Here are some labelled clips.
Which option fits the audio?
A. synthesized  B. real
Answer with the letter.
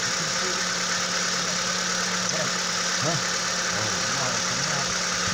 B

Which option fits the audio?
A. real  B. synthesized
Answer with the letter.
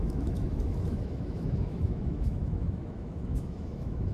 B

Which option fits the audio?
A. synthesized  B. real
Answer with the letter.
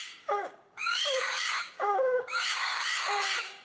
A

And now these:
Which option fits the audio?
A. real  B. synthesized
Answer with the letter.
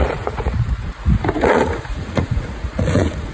B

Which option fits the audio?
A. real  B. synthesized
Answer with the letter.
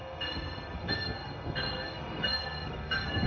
B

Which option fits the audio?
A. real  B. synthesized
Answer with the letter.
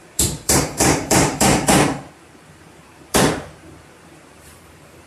B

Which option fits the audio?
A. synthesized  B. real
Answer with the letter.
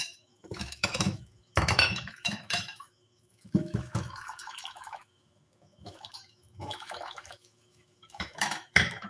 A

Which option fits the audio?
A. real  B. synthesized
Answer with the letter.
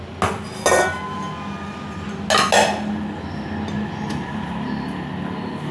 A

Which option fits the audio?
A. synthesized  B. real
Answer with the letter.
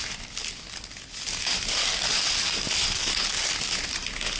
B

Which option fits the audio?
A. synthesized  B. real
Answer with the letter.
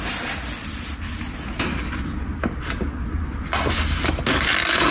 B